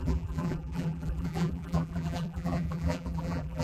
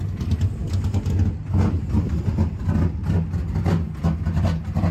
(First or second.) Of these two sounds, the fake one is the first